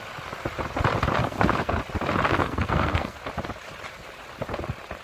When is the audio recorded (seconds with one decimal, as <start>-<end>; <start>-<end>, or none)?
0.0-1.2; 1.8-2.3; 3.2-5.0